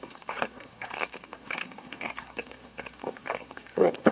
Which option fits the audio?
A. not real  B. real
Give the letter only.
A